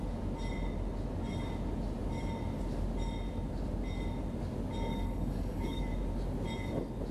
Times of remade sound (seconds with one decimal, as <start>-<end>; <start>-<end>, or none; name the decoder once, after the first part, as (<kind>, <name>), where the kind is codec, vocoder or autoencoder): 4.9-5.8 (codec, DAC)